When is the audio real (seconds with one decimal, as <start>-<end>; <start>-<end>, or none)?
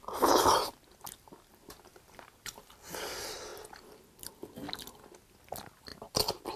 0.0-1.9; 3.0-6.6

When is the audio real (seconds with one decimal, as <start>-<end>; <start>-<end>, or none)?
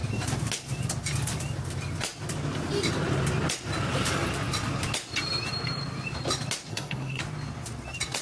0.0-6.7; 7.2-8.2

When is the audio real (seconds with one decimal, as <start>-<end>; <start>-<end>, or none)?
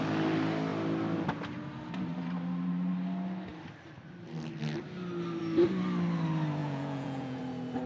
0.0-6.6; 7.4-7.9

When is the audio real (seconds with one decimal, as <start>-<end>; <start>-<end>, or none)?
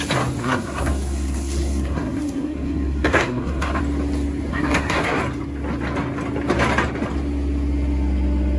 0.0-0.4; 3.8-4.5; 5.2-8.6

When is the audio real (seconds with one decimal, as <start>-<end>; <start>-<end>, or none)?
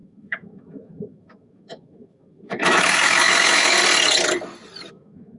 3.8-4.9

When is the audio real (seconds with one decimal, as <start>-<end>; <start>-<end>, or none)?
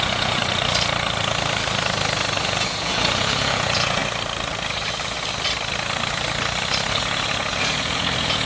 0.4-2.4; 4.0-7.0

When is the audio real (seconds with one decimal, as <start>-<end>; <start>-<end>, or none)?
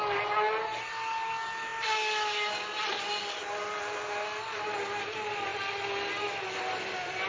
0.0-7.3